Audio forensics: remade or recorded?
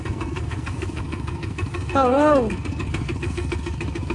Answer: remade